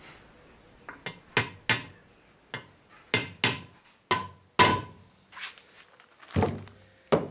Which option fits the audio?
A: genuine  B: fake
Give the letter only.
A